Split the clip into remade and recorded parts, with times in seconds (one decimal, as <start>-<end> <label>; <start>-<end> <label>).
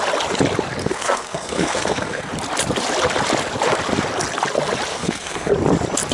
0.0-0.8 recorded; 0.8-2.3 remade; 2.3-4.9 recorded; 4.9-5.5 remade; 5.5-6.1 recorded